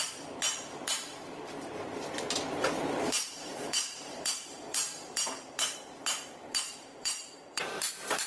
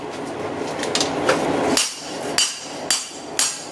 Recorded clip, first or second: second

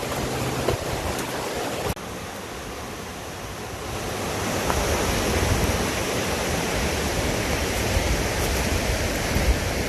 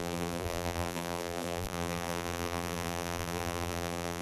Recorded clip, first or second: first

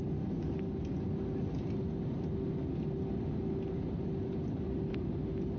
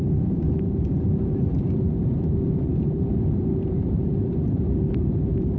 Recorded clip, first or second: first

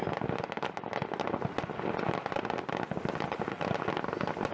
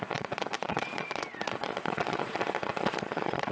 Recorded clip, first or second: first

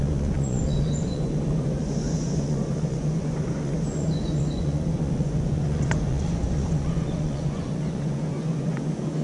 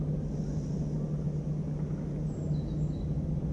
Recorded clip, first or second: second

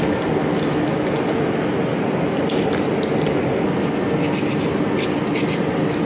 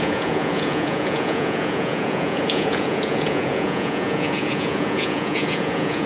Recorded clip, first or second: first